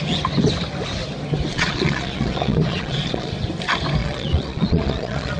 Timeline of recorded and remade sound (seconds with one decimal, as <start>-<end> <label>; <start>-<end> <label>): 0.0-1.5 recorded; 1.5-3.3 remade; 3.3-4.0 recorded; 4.0-5.4 remade